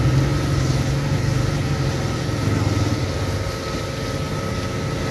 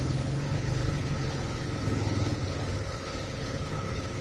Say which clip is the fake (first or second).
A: second